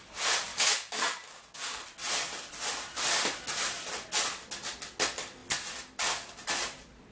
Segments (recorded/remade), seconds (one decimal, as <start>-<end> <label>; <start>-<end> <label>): 0.0-0.5 recorded; 0.5-1.8 remade; 1.8-7.1 recorded